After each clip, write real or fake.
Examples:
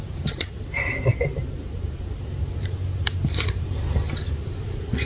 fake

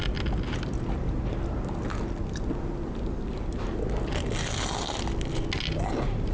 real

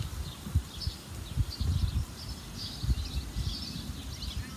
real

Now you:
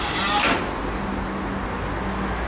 real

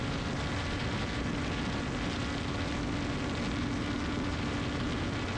real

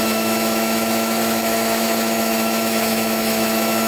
fake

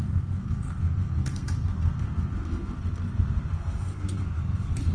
fake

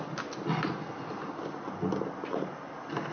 real